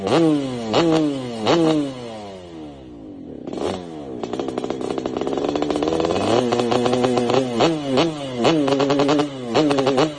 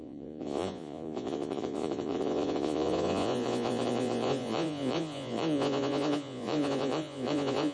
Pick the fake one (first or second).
second